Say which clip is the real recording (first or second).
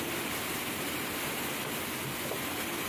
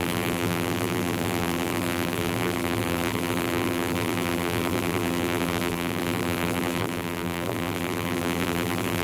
first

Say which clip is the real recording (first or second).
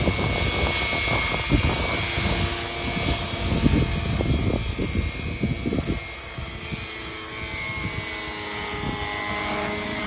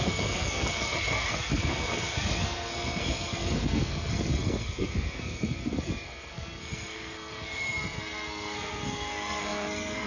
first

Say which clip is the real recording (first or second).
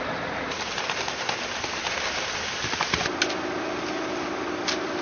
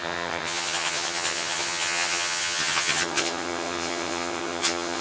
first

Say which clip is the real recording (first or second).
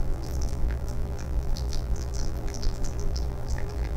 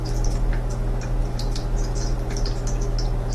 second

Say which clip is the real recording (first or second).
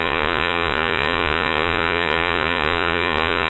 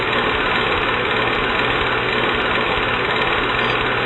second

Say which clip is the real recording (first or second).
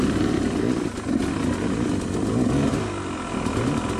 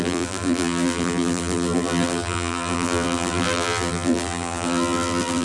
first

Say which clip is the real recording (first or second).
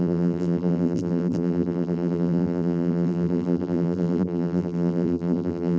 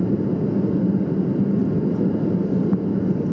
second